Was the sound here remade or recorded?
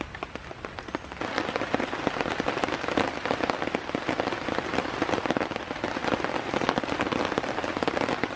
recorded